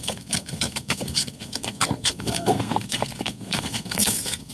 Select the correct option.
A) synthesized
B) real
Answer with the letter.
A